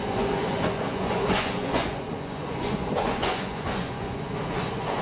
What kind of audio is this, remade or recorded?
remade